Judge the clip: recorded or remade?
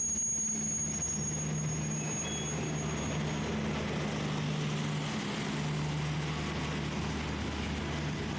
recorded